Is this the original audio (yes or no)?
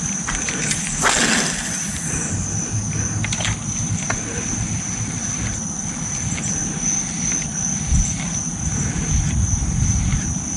yes